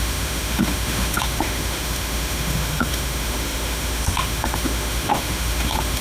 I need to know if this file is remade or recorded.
remade